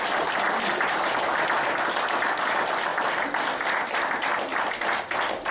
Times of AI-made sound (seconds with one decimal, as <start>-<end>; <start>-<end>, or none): none